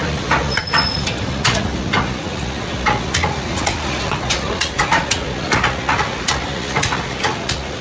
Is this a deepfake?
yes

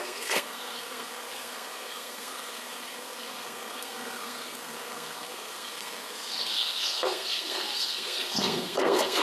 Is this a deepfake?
yes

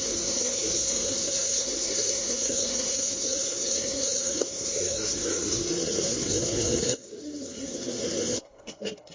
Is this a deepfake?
yes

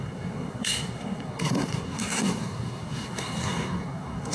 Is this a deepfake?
yes